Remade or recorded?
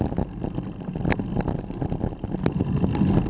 recorded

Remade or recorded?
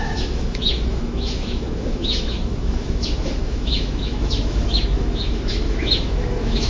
remade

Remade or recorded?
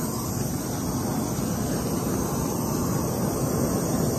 recorded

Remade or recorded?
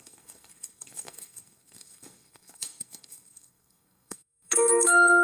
remade